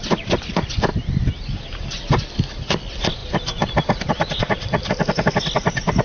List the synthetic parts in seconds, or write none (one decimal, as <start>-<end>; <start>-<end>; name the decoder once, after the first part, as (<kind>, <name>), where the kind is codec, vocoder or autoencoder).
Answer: 3.2-4.9 (vocoder, BigVGAN v2)